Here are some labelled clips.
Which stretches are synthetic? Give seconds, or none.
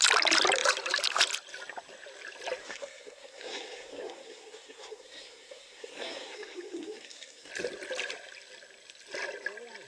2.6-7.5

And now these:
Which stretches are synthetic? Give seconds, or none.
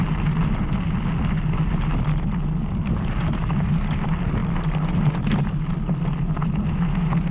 none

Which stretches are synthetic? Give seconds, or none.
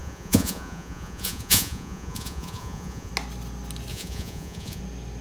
0.0-3.1; 3.9-4.8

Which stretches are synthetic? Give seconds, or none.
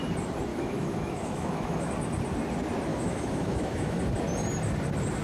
0.5-1.9; 2.9-4.0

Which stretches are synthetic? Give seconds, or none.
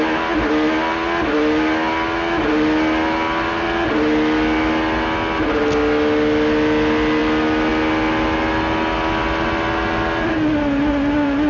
none